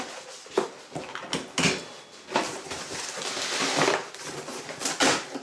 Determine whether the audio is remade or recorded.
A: recorded